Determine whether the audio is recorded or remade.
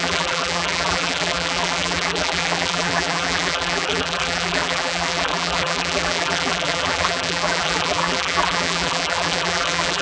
remade